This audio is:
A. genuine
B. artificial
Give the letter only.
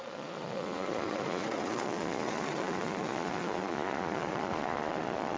B